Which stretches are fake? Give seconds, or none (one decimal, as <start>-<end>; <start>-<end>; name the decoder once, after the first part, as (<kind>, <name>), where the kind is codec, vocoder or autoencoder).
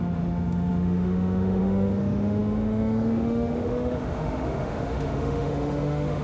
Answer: 0.0-6.2 (autoencoder, DAC-VAE)